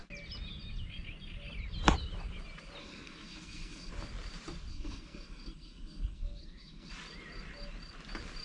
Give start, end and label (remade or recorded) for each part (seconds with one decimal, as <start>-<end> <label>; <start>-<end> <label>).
0.0-2.8 recorded; 2.8-3.9 remade; 3.9-4.7 recorded; 4.7-6.9 remade; 6.9-8.4 recorded